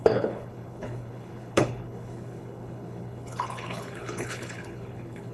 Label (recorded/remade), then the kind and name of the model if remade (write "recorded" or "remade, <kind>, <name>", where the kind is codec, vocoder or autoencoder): remade, codec, HILCodec